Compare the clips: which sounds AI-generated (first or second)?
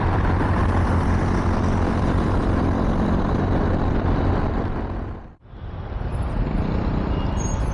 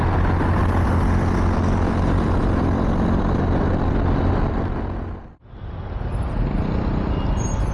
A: first